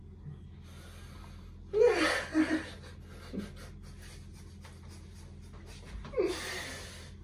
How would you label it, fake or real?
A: real